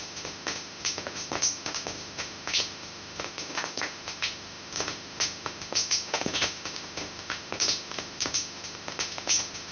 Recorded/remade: remade